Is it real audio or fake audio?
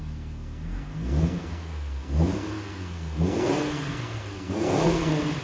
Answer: fake